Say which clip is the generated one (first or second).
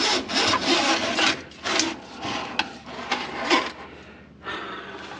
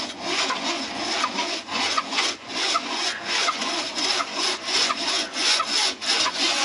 second